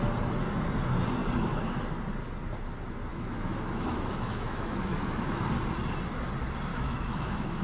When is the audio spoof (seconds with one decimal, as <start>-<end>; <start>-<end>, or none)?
3.1-5.5; 6.7-7.6